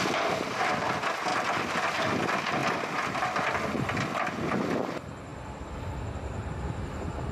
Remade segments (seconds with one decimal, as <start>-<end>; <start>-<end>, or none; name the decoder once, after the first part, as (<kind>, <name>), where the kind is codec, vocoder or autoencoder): 1.3-1.9 (vocoder, BigVGAN v2); 5.3-6.0